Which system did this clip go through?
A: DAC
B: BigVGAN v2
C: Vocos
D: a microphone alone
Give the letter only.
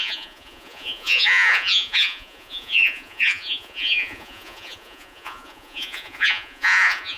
C